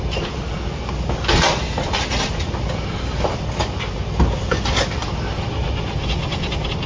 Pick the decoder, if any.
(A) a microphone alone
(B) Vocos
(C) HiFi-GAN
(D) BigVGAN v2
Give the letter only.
A